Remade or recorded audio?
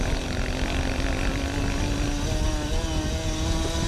recorded